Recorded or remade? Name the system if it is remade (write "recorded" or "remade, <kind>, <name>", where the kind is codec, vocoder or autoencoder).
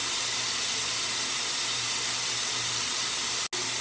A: recorded